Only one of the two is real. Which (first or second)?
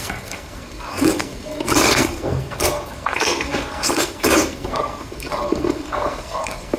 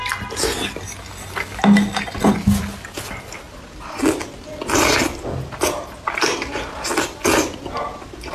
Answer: second